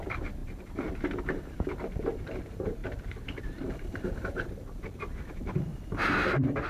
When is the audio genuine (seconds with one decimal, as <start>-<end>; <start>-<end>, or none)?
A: 5.7-6.3